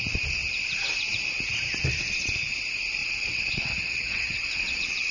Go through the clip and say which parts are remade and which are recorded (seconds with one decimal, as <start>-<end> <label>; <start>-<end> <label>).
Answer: 0.0-3.0 recorded; 3.0-5.1 remade